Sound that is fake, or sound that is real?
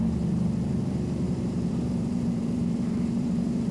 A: fake